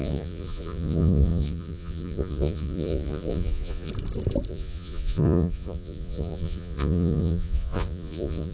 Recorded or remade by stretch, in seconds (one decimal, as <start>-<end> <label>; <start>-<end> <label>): 0.0-3.9 remade; 3.9-4.5 recorded; 4.5-8.5 remade

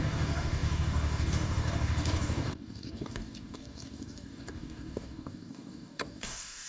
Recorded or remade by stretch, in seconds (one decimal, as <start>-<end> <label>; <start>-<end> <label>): 0.0-6.7 remade